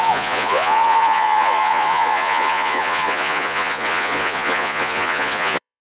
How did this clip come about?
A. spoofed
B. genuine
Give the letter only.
A